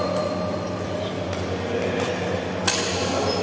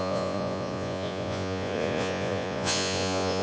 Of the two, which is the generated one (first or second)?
second